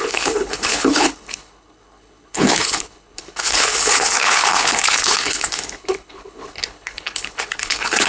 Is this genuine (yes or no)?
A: no